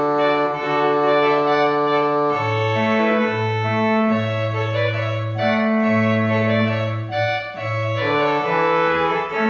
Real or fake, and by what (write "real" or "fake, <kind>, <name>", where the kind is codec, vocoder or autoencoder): real